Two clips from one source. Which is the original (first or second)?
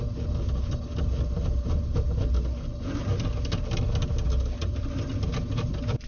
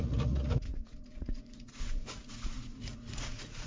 first